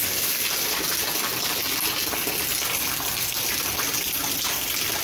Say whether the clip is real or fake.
real